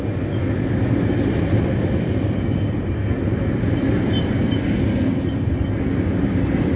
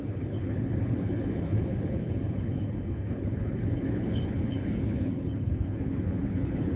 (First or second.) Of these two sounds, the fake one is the second